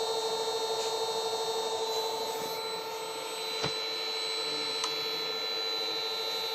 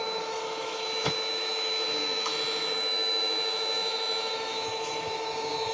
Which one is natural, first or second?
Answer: first